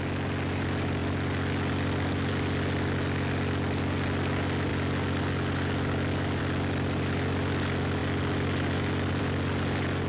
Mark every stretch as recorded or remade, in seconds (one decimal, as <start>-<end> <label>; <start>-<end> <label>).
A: 0.0-10.1 recorded